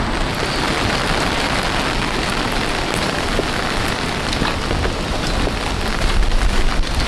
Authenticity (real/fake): real